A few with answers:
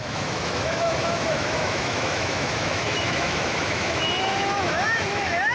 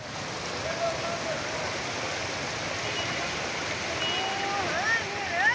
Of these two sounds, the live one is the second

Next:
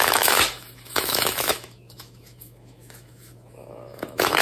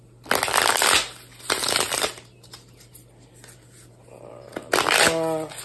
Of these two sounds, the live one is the second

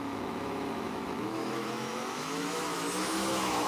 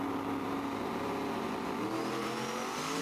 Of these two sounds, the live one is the second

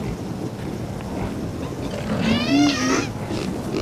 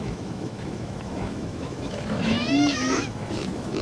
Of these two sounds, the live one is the first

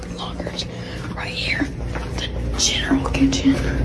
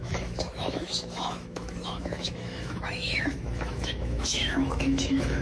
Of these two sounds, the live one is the first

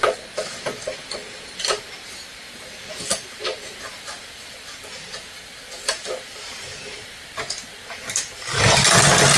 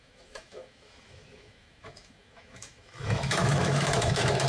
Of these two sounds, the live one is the first